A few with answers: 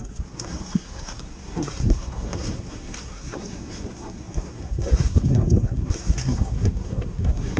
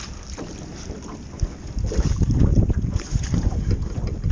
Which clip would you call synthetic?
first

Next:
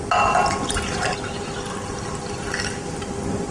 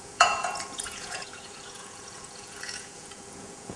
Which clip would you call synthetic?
second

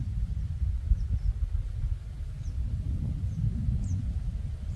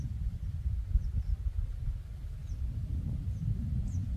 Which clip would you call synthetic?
second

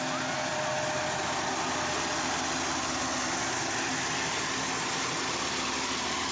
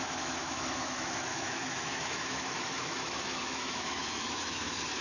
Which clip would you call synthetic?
second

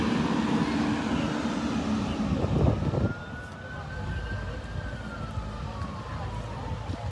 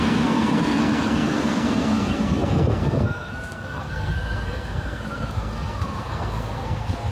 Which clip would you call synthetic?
second